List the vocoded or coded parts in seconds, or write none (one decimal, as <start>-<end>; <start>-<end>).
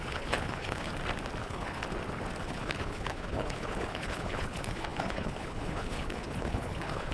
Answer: 0.0-0.9; 1.4-1.8; 2.4-7.1